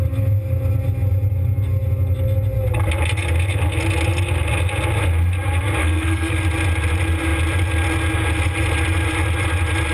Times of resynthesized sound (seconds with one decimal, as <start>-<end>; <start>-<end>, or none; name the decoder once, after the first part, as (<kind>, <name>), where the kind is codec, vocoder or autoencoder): 5.8-6.4 (codec, SNAC)

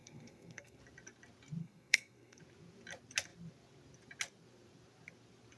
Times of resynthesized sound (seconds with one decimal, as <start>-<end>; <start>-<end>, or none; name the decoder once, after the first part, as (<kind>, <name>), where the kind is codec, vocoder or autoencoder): 0.0-0.8 (codec, SNAC); 1.6-2.4

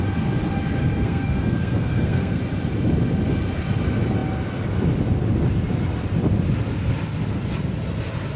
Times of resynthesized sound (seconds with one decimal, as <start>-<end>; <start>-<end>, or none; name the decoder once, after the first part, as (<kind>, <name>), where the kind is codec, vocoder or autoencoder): 0.9-2.4 (codec, SNAC)

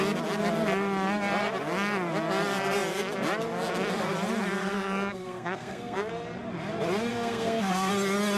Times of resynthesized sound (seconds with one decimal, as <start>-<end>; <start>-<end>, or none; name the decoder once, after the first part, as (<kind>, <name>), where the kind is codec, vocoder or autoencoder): 4.6-6.1 (codec, SNAC); 7.1-7.9

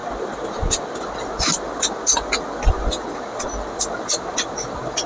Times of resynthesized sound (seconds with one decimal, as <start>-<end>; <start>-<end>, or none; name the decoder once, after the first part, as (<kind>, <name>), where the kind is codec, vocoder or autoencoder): none

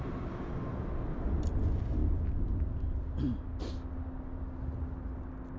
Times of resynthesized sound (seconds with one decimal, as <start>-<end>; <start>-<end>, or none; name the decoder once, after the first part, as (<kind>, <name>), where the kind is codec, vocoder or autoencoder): none

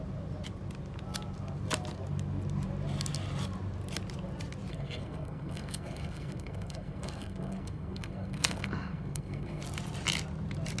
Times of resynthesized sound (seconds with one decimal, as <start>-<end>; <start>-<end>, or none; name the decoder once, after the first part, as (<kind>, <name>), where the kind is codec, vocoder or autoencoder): 4.7-9.6 (codec, SNAC)

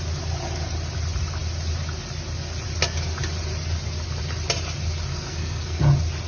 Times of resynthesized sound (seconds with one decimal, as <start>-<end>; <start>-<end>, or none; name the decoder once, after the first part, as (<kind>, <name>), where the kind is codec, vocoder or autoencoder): 5.1-5.8 (codec, SNAC)